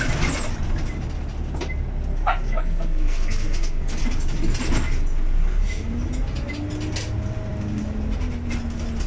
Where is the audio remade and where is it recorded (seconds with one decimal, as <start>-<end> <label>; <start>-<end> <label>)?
0.0-2.1 recorded; 2.1-4.0 remade; 4.0-9.1 recorded